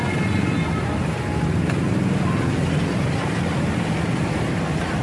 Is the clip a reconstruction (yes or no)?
no